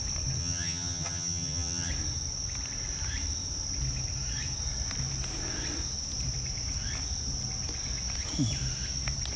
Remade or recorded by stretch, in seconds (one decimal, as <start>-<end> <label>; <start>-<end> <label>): 0.0-0.4 recorded; 0.4-1.9 remade; 1.9-9.4 recorded